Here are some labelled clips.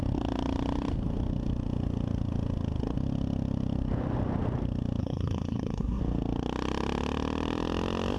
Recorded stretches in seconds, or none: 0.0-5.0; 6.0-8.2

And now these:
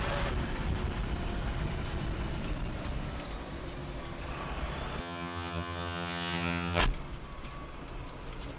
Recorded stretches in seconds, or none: 0.0-5.0; 6.8-8.6